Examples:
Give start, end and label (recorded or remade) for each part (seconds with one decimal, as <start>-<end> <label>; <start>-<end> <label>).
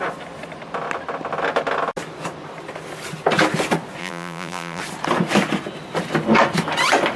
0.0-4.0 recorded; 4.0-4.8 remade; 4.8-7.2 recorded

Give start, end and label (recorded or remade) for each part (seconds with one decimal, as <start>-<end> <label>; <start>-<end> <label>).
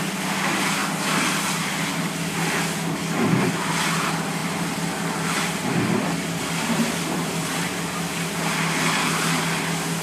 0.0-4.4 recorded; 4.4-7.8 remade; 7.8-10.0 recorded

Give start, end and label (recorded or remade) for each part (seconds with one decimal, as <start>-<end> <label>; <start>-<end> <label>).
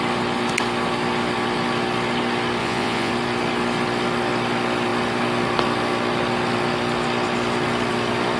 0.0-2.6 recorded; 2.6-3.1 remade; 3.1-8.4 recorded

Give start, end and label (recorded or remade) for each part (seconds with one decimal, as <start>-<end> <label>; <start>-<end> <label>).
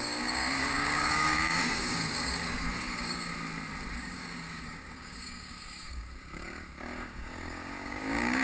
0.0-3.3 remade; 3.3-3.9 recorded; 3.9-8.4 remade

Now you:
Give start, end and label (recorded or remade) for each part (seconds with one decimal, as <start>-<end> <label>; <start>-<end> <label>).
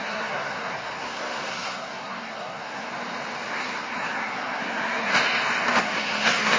0.0-2.9 remade; 2.9-3.5 recorded; 3.5-5.1 remade; 5.1-5.8 recorded; 5.8-6.6 remade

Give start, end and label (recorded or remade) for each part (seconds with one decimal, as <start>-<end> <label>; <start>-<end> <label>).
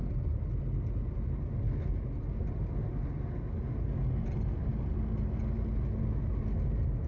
0.0-7.1 recorded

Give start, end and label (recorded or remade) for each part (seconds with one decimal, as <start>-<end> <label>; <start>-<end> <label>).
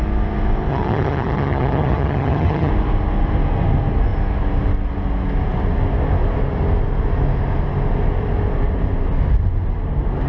0.0-0.7 recorded; 0.7-2.7 remade; 2.7-10.3 recorded